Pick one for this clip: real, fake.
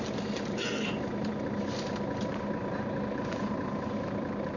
real